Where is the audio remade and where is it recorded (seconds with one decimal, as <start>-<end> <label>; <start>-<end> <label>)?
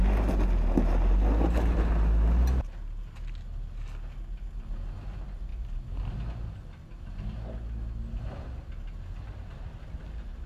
0.0-10.5 recorded